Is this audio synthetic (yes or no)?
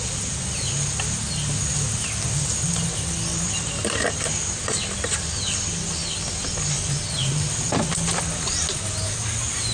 no